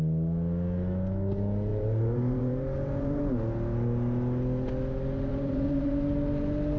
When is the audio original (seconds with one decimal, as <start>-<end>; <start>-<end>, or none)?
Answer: 0.0-1.7; 3.2-5.3; 5.9-6.8